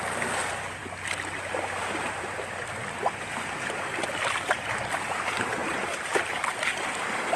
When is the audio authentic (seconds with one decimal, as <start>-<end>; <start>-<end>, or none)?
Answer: 0.0-7.4